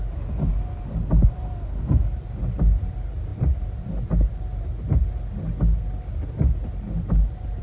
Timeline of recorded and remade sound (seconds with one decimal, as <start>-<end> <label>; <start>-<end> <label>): 0.0-7.6 recorded